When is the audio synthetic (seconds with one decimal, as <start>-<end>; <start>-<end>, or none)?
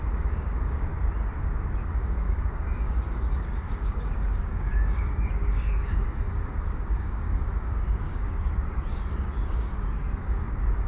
0.0-0.9; 1.9-10.9